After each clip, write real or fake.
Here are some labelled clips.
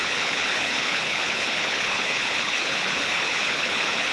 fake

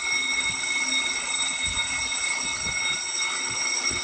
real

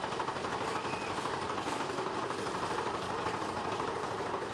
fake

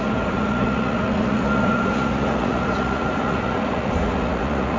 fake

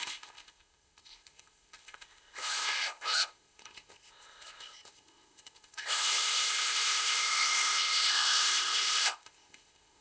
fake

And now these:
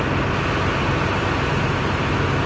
real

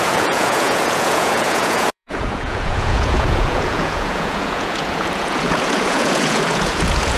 fake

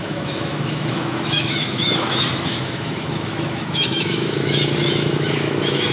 fake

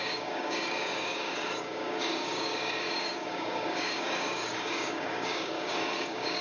fake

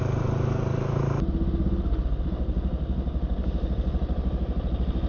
real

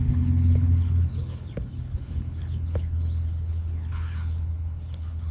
fake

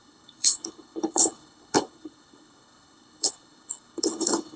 fake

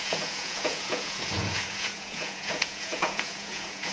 fake